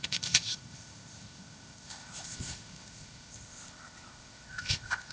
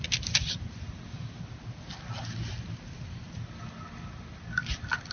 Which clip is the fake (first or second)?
first